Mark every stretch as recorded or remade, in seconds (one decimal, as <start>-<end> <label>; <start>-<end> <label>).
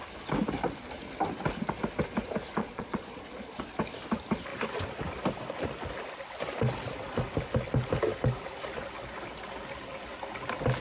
0.0-2.6 recorded; 2.6-3.6 remade; 3.6-10.8 recorded